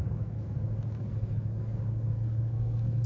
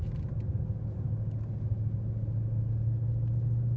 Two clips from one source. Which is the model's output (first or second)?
first